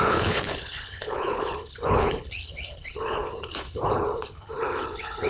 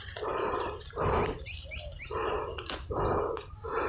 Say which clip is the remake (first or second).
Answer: first